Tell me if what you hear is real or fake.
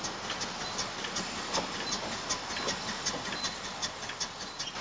real